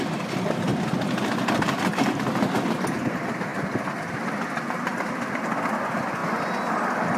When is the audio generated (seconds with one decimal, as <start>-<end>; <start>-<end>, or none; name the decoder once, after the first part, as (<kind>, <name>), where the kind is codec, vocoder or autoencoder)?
0.7-2.5 (vocoder, BigVGAN v2); 6.2-7.2